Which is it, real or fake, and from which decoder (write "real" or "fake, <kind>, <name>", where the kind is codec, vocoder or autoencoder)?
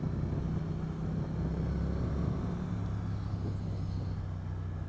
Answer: real